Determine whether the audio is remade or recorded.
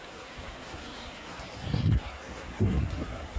remade